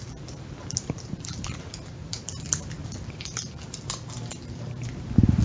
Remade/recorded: remade